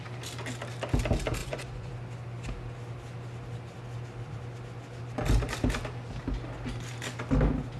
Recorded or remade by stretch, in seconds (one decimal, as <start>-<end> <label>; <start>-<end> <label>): 0.0-1.4 recorded; 1.4-1.9 remade; 1.9-7.8 recorded